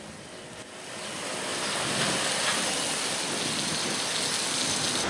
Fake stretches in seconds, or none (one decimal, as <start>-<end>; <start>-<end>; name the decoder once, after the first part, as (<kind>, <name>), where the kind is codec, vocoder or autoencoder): none

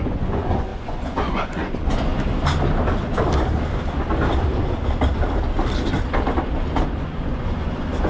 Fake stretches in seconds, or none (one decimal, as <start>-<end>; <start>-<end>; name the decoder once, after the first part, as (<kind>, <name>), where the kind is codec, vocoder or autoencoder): 0.0-2.1 (vocoder, Vocos); 7.0-8.1

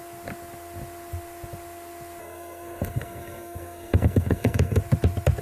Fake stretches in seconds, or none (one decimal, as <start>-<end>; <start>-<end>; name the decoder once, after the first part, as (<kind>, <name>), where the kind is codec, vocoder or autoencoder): 2.2-4.8 (codec, SNAC)